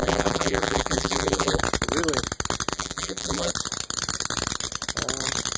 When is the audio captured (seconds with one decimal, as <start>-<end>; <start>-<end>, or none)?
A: 1.6-2.7; 3.5-5.6